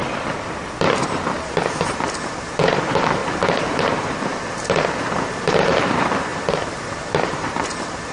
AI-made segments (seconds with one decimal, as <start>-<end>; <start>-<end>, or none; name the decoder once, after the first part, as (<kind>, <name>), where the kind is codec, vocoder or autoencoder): 1.0-3.2 (vocoder, BigVGAN v2); 3.7-4.3; 5.0-8.1